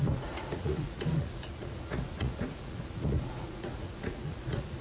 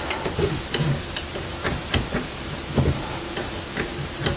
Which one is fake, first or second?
first